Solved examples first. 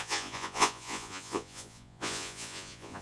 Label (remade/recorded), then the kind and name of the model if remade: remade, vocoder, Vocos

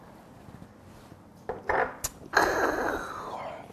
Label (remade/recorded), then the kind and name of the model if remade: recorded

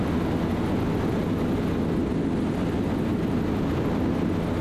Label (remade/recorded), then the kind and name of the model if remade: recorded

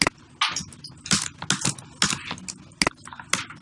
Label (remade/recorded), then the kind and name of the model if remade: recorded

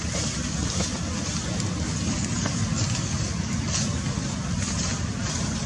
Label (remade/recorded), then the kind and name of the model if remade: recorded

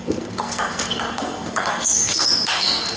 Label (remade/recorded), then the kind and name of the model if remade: remade, codec, SNAC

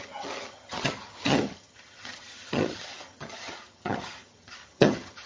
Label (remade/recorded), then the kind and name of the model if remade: remade, vocoder, HiFi-GAN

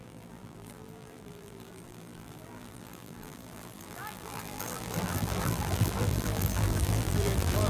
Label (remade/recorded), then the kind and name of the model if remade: remade, vocoder, BigVGAN v2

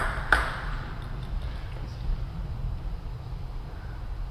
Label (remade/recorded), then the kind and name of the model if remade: remade, vocoder, BigVGAN v2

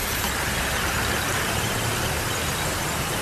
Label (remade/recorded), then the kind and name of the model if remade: recorded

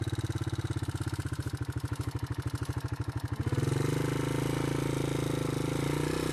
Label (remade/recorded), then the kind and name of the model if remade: recorded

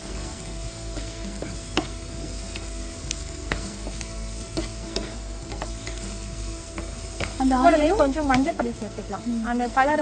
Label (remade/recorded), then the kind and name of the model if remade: remade, codec, SNAC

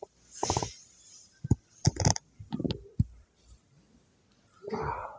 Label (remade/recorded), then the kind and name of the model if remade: recorded